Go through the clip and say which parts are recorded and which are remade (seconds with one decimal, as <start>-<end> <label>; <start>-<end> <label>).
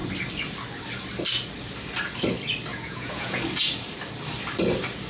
0.0-2.7 recorded; 2.7-3.4 remade; 3.4-5.1 recorded